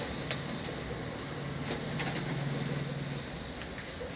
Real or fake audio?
real